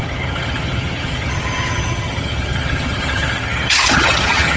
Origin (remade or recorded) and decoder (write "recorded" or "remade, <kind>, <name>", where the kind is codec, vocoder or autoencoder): remade, vocoder, HiFi-GAN